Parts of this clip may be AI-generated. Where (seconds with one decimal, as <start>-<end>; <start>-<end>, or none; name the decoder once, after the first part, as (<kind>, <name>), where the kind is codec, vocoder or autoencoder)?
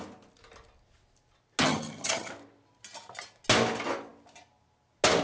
1.6-2.3 (vocoder, HiFi-GAN)